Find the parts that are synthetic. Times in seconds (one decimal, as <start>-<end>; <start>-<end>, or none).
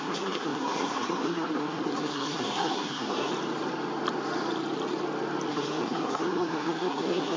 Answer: 0.0-3.3; 5.5-7.4